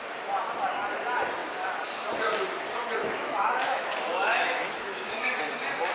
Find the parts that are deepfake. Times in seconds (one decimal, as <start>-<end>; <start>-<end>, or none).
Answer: 3.0-5.5